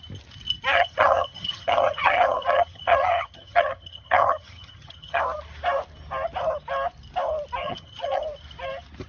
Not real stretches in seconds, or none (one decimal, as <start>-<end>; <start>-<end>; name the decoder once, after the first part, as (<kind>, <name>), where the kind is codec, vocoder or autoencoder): 0.7-5.2 (vocoder, HiFi-GAN); 7.6-8.2

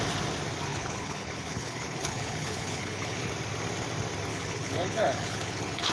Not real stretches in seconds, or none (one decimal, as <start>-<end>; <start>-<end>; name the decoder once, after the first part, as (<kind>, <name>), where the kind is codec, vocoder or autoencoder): 0.7-3.3 (codec, HILCodec); 4.3-5.9

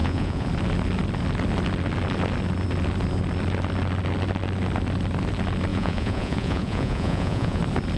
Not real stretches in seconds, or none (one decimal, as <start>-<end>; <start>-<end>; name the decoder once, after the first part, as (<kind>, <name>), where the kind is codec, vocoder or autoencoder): 0.0-0.5 (vocoder, Vocos); 5.7-7.6

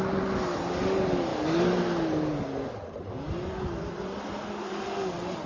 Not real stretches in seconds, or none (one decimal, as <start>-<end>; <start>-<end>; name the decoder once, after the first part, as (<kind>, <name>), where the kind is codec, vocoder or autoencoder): none

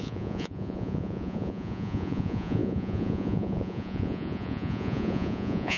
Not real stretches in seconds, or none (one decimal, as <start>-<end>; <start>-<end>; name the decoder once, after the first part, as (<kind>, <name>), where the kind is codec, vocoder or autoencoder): 0.0-5.8 (vocoder, Vocos)

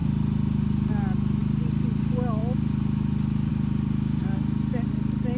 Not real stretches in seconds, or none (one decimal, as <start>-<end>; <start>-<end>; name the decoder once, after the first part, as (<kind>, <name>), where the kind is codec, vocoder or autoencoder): 0.9-4.2 (vocoder, BigVGAN v2); 4.9-5.4

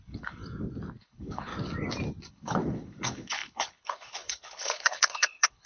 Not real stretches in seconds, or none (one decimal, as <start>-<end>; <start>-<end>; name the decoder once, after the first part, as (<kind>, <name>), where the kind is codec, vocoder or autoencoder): 0.0-0.4 (codec, HILCodec); 1.0-1.5; 2.3-5.7

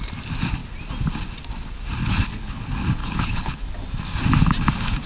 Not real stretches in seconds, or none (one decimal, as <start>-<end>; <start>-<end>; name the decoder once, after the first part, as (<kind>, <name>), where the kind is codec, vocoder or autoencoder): 2.0-2.6 (codec, HILCodec); 3.0-3.6